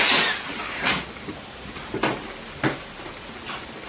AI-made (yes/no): no